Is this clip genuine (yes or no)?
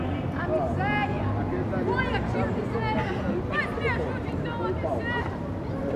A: yes